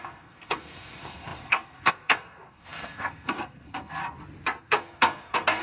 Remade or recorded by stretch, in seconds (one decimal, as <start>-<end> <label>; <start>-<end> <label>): 0.0-4.0 remade; 4.0-4.6 recorded; 4.6-5.6 remade